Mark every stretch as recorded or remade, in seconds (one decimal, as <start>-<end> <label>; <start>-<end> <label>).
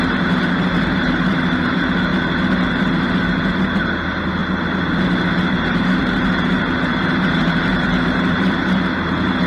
0.0-2.1 remade; 2.1-2.8 recorded; 2.8-4.4 remade; 4.4-5.7 recorded; 5.7-9.5 remade